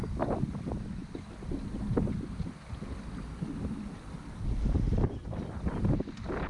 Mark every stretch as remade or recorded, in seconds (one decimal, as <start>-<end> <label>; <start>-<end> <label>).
0.0-6.5 recorded